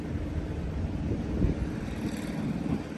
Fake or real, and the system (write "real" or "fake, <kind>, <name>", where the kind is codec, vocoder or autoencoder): real